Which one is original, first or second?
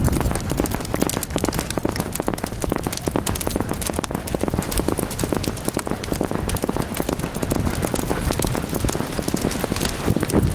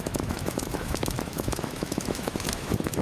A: first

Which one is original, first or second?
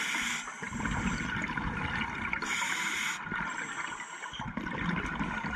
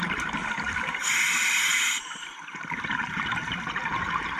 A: first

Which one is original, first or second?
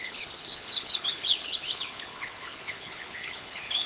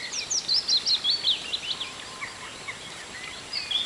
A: second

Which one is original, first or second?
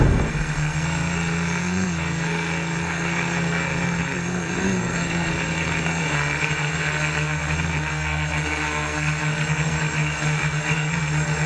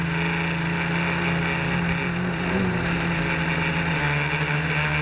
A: second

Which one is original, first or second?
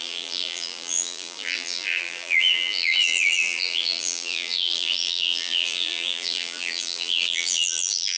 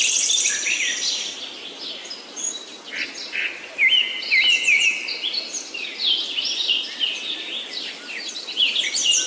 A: second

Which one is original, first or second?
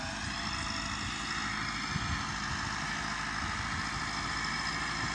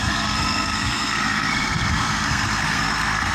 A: first